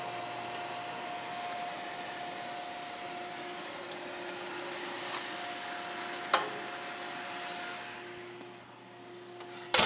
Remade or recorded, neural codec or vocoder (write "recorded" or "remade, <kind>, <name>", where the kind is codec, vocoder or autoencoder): recorded